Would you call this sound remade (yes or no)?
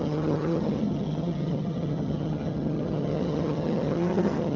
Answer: yes